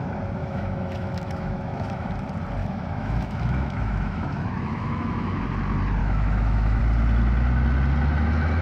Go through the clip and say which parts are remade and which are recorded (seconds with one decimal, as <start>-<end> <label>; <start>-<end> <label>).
0.0-0.4 recorded; 0.4-2.1 remade; 2.1-2.6 recorded; 2.6-5.4 remade; 5.4-6.0 recorded; 6.0-6.8 remade; 6.8-8.6 recorded